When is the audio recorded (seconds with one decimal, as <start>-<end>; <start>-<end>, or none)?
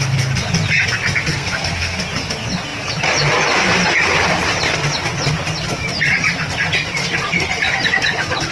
0.0-1.3; 2.0-8.5